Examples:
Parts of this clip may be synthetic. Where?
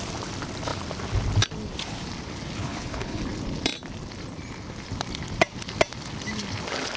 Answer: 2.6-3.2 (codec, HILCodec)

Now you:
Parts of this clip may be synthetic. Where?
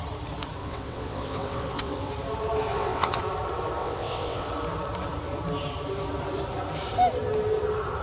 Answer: 0.6-2.1 (vocoder, WaveNeXt); 2.7-3.2; 3.8-4.5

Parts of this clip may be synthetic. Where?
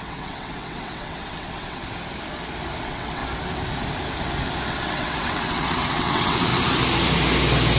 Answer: 0.0-1.8 (vocoder, WaveNeXt); 2.8-3.2; 4.7-6.5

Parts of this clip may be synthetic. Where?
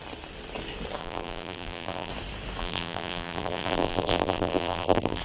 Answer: 1.0-2.1 (vocoder, BigVGAN v2); 2.6-5.2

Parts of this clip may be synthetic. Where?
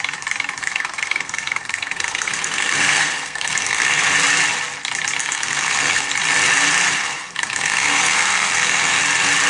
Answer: 0.6-4.1 (codec, SNAC); 5.2-6.1; 7.0-9.0